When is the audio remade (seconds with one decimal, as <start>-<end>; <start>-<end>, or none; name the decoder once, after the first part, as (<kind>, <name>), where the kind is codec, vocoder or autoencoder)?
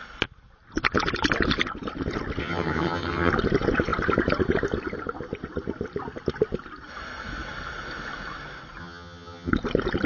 2.4-3.3 (vocoder, HiFi-GAN); 8.8-9.5